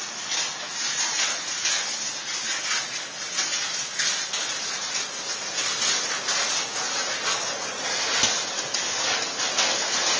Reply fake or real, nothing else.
real